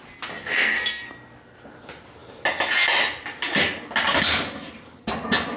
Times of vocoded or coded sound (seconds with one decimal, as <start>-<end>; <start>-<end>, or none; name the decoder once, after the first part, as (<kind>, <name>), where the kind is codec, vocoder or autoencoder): 0.4-1.1 (codec, SNAC)